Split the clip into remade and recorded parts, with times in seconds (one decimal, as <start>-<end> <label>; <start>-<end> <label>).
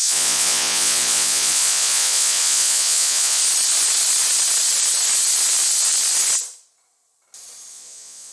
0.0-3.4 remade; 3.4-7.7 recorded; 7.7-8.3 remade